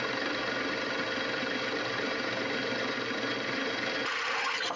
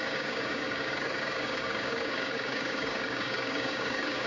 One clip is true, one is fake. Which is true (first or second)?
first